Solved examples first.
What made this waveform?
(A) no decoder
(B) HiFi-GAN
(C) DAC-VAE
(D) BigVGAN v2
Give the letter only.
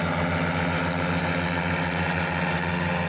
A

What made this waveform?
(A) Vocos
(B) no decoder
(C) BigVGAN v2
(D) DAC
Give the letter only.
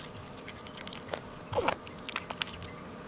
B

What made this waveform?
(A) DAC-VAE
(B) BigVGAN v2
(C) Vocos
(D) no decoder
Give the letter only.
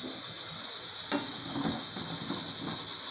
D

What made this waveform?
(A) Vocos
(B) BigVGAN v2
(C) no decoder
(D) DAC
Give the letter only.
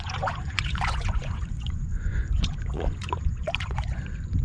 A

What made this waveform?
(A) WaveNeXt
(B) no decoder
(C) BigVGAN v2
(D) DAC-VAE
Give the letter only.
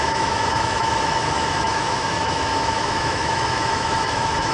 D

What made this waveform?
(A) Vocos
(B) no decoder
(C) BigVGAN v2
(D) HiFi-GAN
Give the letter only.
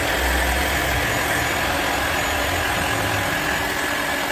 B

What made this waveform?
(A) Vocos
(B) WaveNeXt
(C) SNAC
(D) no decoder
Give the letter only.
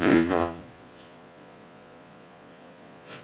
A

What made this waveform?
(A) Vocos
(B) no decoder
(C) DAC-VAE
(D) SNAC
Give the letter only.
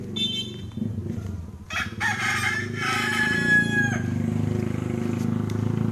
B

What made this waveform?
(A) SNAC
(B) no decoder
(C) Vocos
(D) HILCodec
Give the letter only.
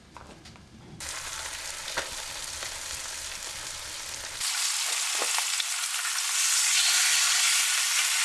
B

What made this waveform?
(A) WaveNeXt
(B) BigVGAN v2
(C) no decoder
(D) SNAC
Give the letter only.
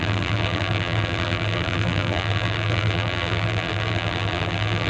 B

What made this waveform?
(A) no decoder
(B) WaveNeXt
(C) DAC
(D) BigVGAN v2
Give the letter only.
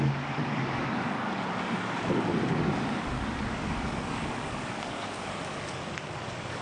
C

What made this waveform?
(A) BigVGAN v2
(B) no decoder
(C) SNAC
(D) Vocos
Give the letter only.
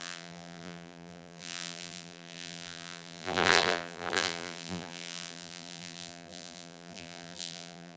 A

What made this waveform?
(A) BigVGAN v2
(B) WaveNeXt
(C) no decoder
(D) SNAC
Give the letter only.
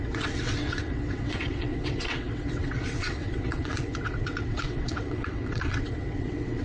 B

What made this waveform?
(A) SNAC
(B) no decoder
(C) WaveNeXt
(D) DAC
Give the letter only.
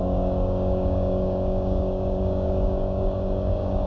D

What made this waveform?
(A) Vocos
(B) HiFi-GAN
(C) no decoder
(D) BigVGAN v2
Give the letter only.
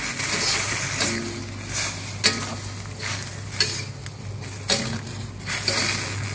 C